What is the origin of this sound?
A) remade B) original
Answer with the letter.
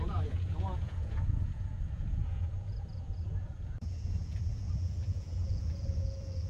A